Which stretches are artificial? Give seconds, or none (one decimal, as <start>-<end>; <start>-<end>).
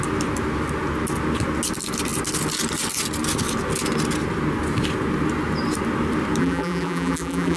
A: 6.4-7.6